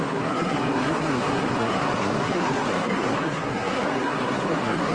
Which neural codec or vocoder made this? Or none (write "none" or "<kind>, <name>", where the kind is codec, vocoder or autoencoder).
codec, SNAC